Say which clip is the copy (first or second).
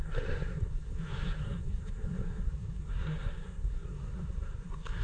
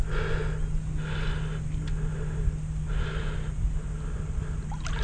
first